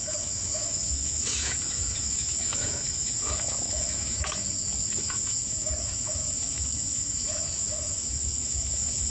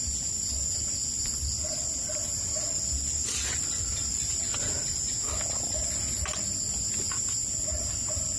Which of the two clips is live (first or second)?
second